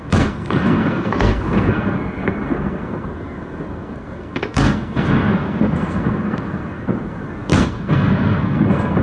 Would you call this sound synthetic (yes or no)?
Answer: yes